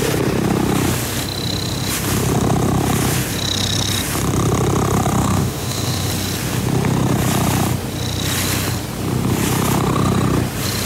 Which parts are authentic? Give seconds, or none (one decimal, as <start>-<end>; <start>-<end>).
0.0-5.2; 6.1-10.9

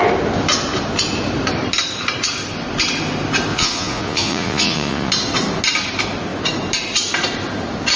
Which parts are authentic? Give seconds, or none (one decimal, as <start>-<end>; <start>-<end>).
0.0-3.5; 5.1-8.0

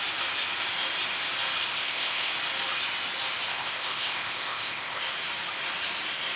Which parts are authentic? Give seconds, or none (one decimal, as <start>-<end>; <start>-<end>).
0.0-1.7; 2.3-3.5; 5.0-6.4

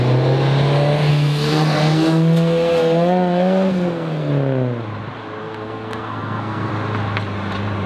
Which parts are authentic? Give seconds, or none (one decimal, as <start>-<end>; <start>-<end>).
0.0-1.1; 4.3-5.4; 6.7-7.9

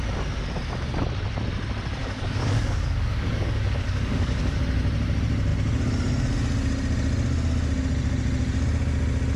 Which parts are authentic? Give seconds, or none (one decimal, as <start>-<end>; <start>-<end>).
0.0-2.0; 4.6-9.4

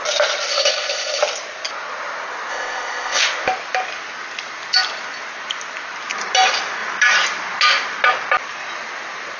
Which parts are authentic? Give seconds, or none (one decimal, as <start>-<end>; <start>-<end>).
0.0-0.5; 1.2-2.5; 3.2-9.4

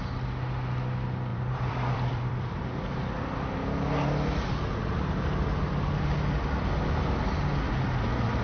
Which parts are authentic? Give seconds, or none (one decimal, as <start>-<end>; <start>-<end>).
0.0-1.3; 3.1-8.4